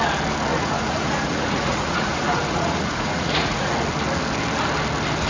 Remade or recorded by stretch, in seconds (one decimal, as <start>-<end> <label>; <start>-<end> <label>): 0.0-0.5 recorded; 0.5-3.7 remade; 3.7-5.3 recorded